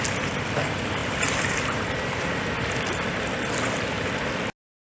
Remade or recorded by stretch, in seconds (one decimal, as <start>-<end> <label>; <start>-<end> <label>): 0.0-5.0 recorded

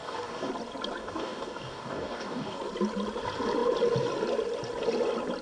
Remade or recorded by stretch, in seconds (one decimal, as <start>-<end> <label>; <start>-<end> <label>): 0.0-0.5 remade; 0.5-1.0 recorded; 1.0-2.6 remade; 2.6-5.4 recorded

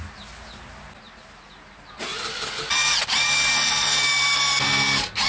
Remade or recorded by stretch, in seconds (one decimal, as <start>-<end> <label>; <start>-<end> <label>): 0.0-5.3 recorded

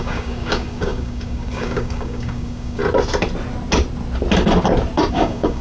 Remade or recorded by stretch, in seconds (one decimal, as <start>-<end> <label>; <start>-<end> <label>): 0.0-2.8 remade; 2.8-5.1 recorded; 5.1-5.6 remade

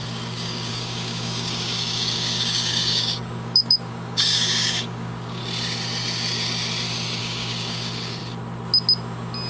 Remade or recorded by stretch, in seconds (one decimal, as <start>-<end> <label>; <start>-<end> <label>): 0.0-5.4 remade; 5.4-7.2 recorded; 7.2-8.2 remade; 8.2-9.5 recorded

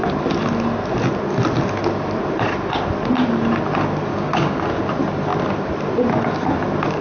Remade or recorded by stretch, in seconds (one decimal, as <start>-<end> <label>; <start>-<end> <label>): 0.0-4.1 recorded; 4.1-4.7 remade; 4.7-7.0 recorded